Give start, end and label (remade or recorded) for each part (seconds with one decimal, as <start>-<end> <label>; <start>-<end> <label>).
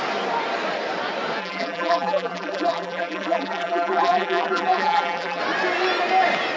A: 0.0-1.4 recorded; 1.4-5.4 remade; 5.4-6.6 recorded